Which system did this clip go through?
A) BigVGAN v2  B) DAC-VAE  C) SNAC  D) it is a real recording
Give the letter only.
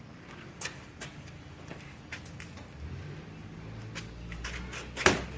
D